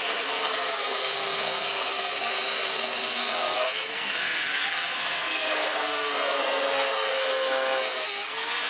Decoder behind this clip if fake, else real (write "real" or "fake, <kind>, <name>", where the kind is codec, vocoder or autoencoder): fake, codec, SNAC